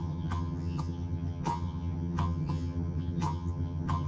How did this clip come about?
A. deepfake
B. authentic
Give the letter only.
A